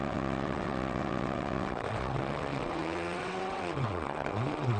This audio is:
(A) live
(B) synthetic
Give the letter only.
B